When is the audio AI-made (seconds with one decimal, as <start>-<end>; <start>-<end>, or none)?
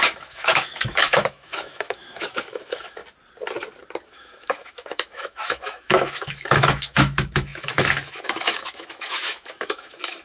0.0-3.0; 4.1-10.2